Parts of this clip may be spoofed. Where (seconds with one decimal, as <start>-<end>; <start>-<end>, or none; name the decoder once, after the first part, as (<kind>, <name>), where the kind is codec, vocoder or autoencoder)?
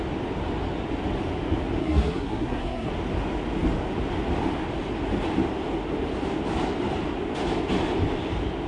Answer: 1.8-2.9 (codec, SNAC)